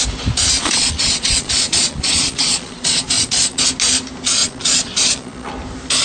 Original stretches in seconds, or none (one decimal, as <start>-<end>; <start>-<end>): 0.0-0.6; 3.6-4.4; 5.5-6.0